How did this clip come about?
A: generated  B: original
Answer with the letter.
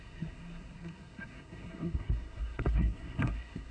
A